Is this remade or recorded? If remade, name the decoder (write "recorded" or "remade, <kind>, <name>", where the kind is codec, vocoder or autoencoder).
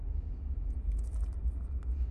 recorded